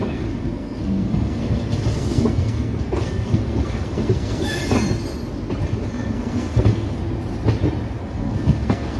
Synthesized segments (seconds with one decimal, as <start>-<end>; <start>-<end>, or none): 0.0-4.6; 5.9-7.0; 8.0-9.0